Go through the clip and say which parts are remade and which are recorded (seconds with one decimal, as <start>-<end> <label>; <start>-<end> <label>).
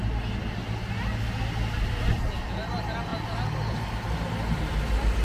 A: 0.0-5.2 recorded